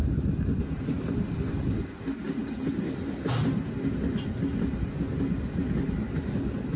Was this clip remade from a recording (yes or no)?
no